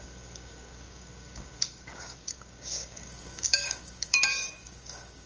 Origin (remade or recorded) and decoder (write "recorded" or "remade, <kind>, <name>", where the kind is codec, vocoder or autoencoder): remade, codec, DAC